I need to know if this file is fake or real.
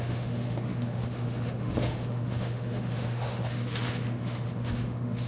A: fake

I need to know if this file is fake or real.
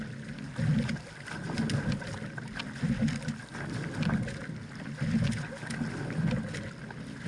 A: real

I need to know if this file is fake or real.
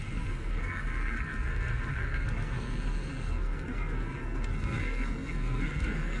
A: fake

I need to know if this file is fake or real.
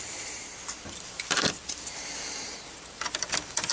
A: fake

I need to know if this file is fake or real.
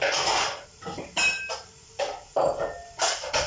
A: fake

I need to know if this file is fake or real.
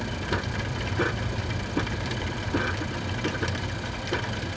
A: fake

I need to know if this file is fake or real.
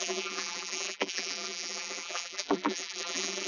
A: fake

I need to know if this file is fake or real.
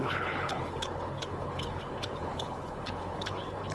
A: fake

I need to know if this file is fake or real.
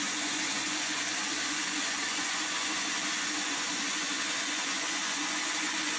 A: fake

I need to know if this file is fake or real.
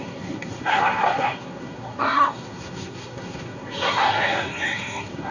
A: fake